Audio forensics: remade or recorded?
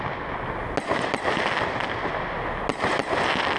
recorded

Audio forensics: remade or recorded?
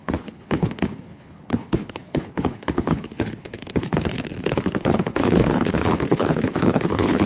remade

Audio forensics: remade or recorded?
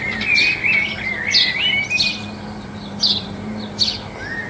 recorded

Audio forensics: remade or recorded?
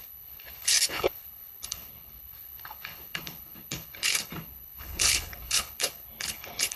remade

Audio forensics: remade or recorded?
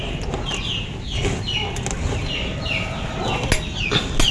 recorded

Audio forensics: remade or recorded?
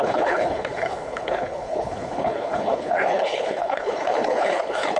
remade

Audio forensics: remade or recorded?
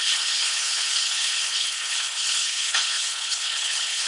remade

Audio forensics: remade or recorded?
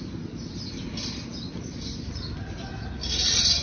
recorded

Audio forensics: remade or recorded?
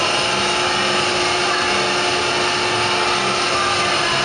recorded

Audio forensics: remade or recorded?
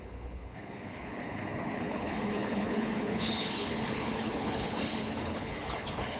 remade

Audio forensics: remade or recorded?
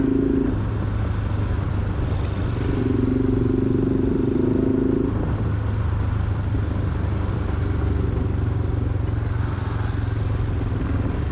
recorded